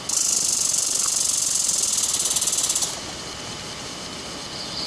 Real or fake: real